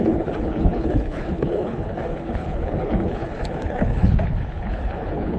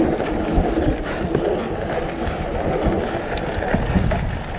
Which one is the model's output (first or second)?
first